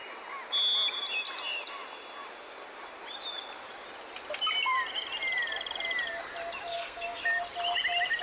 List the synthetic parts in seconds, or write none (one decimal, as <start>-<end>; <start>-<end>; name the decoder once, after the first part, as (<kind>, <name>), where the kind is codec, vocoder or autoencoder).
6.7-7.2 (codec, SNAC)

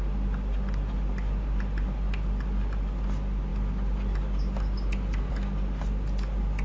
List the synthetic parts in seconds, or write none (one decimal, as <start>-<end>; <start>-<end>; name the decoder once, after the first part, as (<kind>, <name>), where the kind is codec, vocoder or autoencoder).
none

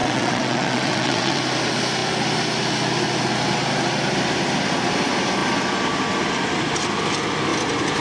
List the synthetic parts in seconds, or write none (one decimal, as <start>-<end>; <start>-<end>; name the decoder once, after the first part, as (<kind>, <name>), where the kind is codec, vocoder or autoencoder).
0.0-1.4 (vocoder, WaveNeXt)

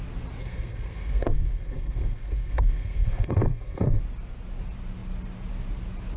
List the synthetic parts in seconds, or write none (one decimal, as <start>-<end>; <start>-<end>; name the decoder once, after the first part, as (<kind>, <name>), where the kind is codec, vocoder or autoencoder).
0.4-4.0 (codec, SNAC)

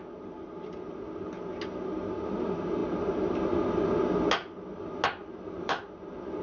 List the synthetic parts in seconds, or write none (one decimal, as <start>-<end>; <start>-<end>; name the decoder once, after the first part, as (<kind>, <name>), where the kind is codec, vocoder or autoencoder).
5.2-5.8 (vocoder, BigVGAN v2)

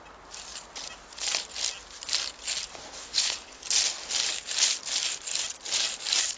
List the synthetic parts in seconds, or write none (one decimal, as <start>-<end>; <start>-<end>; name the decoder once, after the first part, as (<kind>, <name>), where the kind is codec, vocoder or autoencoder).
3.0-3.6 (codec, HILCodec)

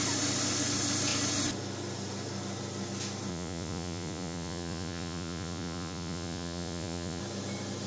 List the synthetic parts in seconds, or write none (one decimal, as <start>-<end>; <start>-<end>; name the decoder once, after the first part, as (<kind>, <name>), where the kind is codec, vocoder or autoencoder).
3.3-7.2 (vocoder, Vocos)

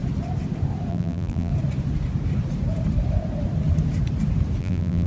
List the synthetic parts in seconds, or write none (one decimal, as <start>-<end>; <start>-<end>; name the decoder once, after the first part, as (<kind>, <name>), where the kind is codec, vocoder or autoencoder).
0.9-1.5 (vocoder, BigVGAN v2); 4.6-5.1